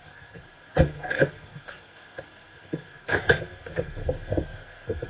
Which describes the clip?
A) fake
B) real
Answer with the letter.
A